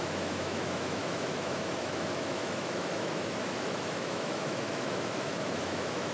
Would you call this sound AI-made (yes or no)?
yes